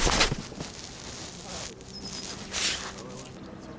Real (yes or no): yes